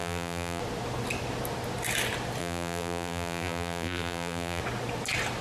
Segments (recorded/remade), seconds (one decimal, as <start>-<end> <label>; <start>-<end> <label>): 0.0-0.6 remade; 0.6-2.4 recorded; 2.4-4.6 remade; 4.6-5.4 recorded